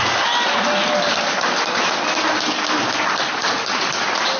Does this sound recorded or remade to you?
recorded